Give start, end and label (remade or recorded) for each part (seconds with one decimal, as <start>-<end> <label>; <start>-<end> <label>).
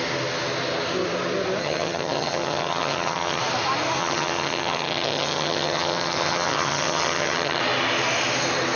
0.0-1.6 recorded; 1.6-3.4 remade; 3.4-4.0 recorded; 4.0-7.6 remade; 7.6-8.8 recorded